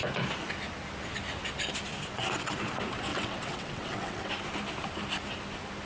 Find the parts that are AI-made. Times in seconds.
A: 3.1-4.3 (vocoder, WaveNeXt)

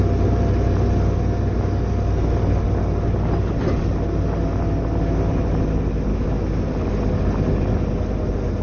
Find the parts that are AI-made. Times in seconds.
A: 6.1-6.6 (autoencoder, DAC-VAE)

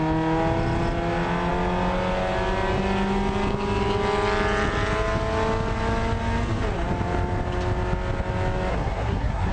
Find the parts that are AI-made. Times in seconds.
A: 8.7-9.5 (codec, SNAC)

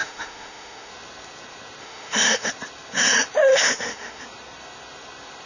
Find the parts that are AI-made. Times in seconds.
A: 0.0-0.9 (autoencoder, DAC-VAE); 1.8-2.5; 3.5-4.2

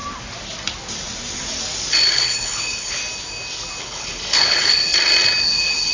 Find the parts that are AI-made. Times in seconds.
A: 2.1-3.0 (codec, HILCodec); 3.8-4.9; 5.4-5.9

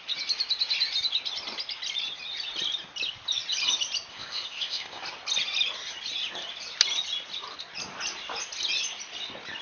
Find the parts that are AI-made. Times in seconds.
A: 4.1-5.0 (codec, ZipCodec)

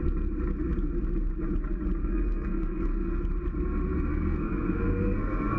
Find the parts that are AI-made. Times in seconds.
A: 2.0-3.2 (codec, SNAC); 4.1-5.6